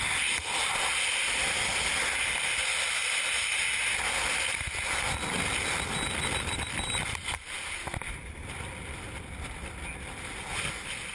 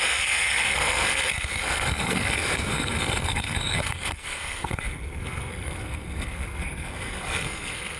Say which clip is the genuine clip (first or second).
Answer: first